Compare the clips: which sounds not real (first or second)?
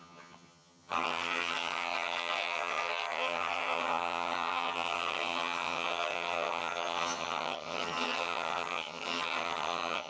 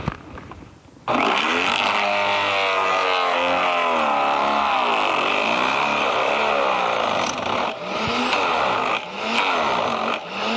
first